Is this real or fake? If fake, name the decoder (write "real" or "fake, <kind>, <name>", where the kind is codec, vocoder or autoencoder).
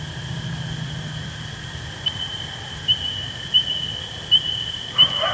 real